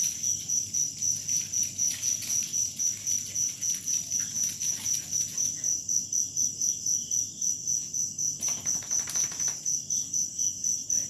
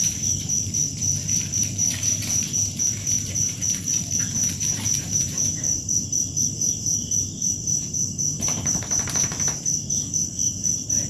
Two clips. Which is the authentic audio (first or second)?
first